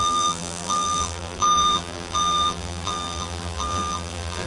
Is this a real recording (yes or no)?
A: no